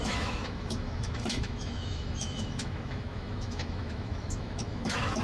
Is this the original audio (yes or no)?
no